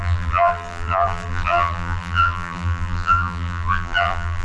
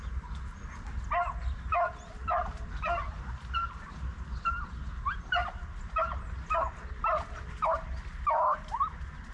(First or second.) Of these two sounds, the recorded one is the second